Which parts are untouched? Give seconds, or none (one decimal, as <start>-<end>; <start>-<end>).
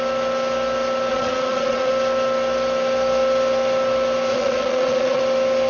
0.0-1.1; 1.9-4.3; 5.2-5.7